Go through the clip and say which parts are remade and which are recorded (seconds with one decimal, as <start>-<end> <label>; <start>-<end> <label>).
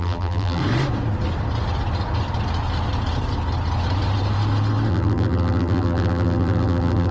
0.0-0.6 remade; 0.6-4.9 recorded; 4.9-7.1 remade